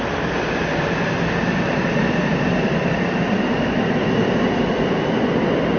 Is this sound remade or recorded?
recorded